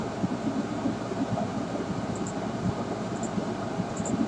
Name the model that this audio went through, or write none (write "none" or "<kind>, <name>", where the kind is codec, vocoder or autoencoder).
vocoder, BigVGAN v2